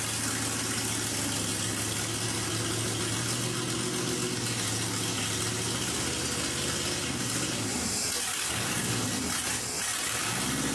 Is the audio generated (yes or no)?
no